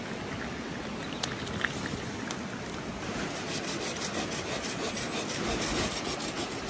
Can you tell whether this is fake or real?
real